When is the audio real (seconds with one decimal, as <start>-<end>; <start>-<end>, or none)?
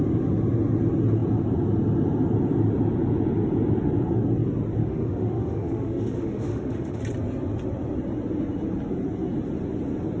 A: 0.0-4.8; 7.0-10.2